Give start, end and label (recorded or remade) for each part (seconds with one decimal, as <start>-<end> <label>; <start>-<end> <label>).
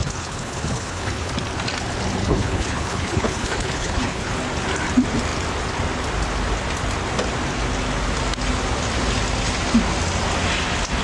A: 0.0-1.3 remade; 1.3-2.2 recorded; 2.2-4.3 remade; 4.3-11.0 recorded